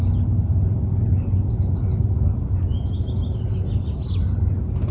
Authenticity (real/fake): real